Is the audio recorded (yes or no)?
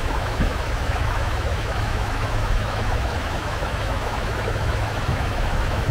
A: no